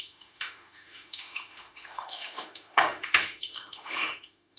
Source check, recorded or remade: remade